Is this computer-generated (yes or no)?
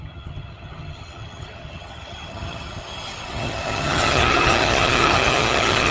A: yes